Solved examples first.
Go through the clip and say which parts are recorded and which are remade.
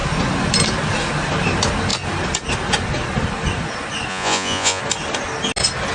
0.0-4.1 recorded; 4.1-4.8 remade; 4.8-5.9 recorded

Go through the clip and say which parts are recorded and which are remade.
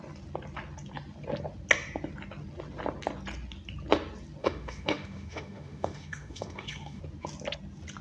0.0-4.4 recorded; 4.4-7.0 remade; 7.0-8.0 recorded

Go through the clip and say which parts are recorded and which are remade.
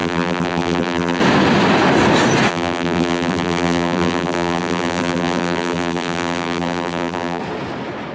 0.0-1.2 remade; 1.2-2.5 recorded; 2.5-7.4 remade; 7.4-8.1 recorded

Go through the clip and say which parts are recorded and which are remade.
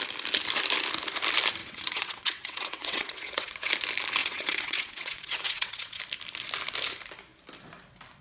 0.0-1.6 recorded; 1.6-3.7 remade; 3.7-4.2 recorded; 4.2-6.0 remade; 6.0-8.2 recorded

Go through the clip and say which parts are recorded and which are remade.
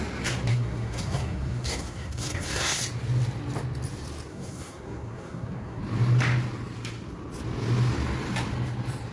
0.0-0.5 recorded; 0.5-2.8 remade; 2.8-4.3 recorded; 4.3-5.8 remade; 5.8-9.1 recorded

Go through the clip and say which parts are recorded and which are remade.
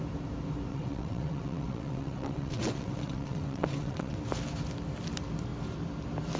0.0-0.7 recorded; 0.7-4.2 remade; 4.2-6.4 recorded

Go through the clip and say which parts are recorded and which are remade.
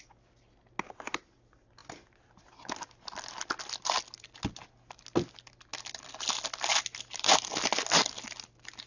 0.0-8.9 recorded